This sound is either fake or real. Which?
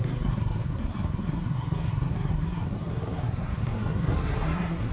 fake